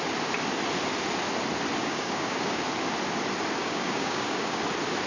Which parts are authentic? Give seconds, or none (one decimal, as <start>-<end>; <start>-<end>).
0.0-1.8; 2.6-3.6; 4.6-5.1